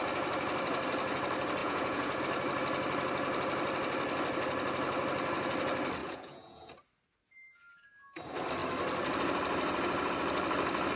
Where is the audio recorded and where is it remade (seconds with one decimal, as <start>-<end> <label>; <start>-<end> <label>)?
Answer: 0.0-1.6 recorded; 1.6-2.2 remade; 2.2-6.0 recorded; 6.0-6.7 remade; 6.7-11.0 recorded